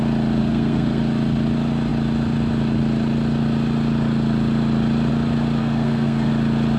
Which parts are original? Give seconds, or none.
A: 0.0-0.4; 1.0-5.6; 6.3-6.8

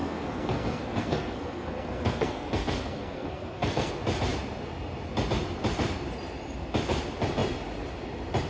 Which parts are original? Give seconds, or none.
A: 3.9-8.5